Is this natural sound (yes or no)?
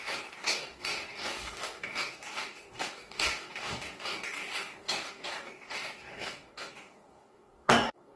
no